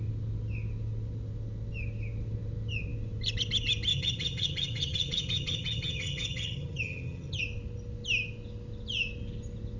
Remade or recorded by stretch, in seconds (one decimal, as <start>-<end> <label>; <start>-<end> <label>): 0.0-3.9 recorded; 3.9-7.4 remade; 7.4-9.8 recorded